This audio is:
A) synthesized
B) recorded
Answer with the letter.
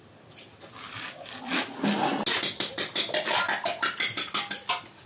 B